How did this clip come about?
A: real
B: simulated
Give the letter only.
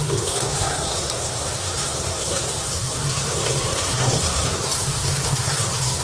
B